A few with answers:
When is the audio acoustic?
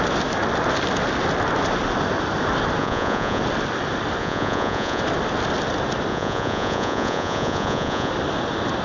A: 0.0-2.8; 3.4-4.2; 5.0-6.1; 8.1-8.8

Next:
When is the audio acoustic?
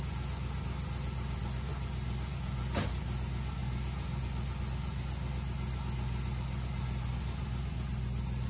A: 0.0-8.5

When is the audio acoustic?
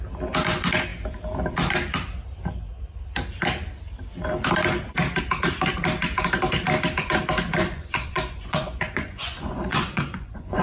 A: 0.0-7.6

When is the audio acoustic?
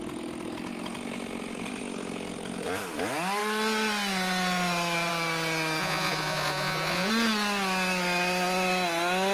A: 0.0-5.8; 7.1-9.3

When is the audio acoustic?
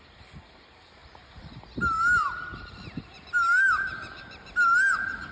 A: 0.0-5.3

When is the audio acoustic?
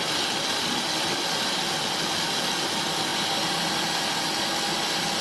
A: 0.0-5.2